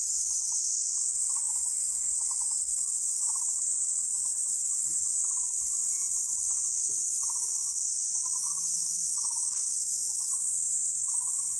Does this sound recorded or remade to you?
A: remade